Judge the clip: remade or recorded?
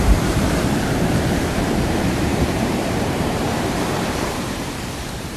remade